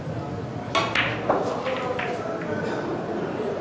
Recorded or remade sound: recorded